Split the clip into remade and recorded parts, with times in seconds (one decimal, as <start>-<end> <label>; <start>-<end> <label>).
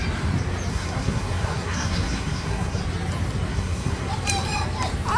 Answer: 0.0-0.7 recorded; 0.7-2.8 remade; 2.8-3.5 recorded; 3.5-4.1 remade; 4.1-5.2 recorded